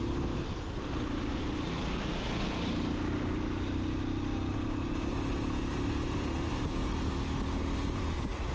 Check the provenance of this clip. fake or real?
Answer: real